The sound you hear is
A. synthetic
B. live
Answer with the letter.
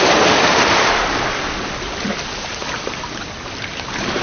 B